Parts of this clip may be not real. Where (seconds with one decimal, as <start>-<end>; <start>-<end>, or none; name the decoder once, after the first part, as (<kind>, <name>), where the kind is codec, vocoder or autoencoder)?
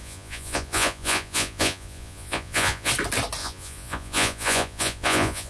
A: 0.0-2.9 (vocoder, Vocos); 3.4-5.5